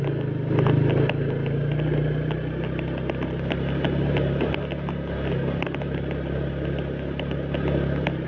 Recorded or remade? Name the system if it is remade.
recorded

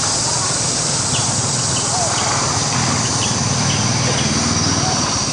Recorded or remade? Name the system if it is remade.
recorded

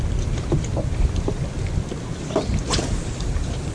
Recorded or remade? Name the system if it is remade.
recorded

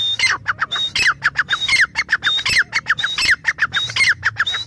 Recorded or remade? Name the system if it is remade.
recorded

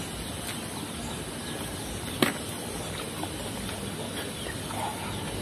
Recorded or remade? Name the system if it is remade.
recorded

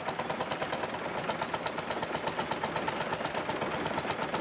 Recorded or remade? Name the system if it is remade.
recorded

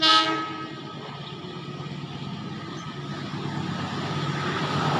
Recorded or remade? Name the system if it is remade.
recorded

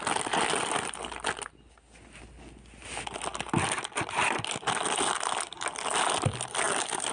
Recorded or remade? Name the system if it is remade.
recorded